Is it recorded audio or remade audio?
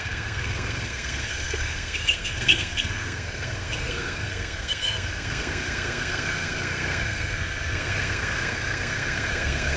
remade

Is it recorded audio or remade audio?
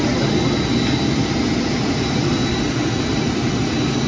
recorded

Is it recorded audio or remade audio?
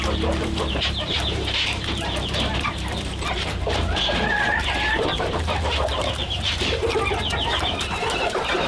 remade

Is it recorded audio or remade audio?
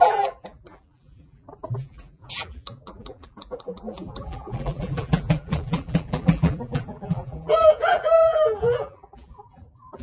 remade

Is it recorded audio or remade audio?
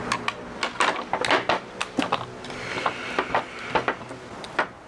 recorded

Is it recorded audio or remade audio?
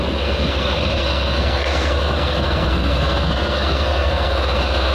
remade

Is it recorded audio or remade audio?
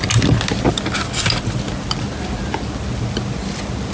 recorded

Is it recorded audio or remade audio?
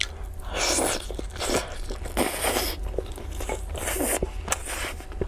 recorded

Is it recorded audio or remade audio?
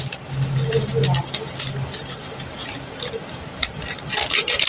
recorded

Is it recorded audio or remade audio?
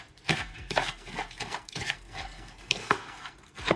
remade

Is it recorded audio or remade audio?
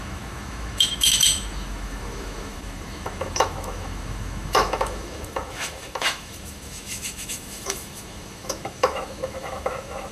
remade